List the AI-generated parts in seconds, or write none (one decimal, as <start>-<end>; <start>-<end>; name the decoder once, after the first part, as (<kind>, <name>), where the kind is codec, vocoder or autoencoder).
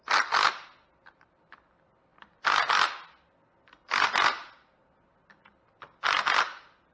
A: none